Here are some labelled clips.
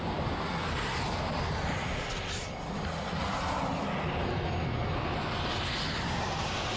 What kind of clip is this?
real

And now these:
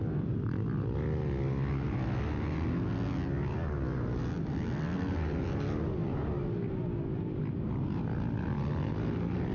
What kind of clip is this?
real